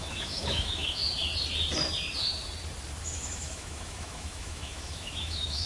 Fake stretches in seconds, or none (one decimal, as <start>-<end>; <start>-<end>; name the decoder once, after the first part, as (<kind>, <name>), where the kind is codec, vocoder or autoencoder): 0.0-1.0 (autoencoder, DAC-VAE); 3.0-5.7